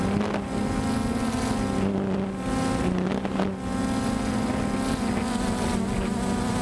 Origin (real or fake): real